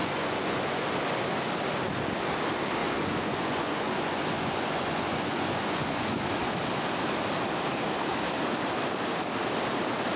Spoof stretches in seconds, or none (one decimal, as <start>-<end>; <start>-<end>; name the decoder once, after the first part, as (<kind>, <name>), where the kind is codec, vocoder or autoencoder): 0.0-0.9 (vocoder, Vocos); 2.8-6.2